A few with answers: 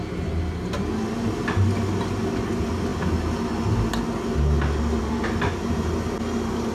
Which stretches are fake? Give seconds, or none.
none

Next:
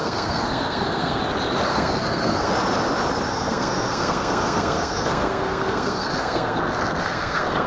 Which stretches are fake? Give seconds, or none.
0.0-1.2 (codec, SNAC); 1.7-2.5; 3.3-7.7

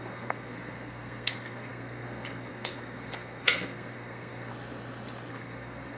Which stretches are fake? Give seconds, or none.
0.0-4.5 (codec, SNAC); 5.3-6.0

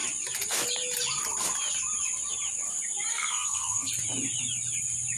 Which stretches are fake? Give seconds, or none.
3.1-3.9 (codec, SNAC)